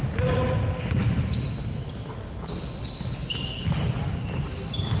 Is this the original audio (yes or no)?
yes